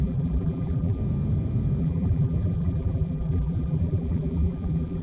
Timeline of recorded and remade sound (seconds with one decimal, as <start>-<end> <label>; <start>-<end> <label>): 0.0-1.0 remade; 1.0-1.8 recorded; 1.8-5.0 remade